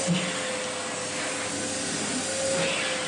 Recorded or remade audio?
recorded